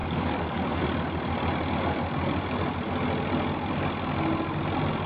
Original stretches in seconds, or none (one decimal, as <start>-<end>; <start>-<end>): 0.8-5.1